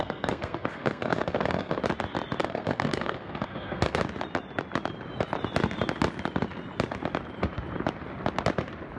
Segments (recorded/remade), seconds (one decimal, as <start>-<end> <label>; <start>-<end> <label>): 0.0-1.8 remade; 1.8-2.4 recorded; 2.4-4.0 remade; 4.0-9.0 recorded